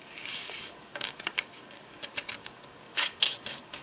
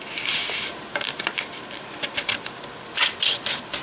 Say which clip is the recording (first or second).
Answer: second